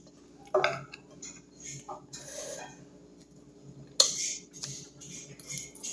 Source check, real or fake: real